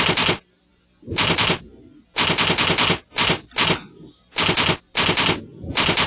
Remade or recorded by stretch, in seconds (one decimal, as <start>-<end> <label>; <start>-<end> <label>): 0.0-6.1 recorded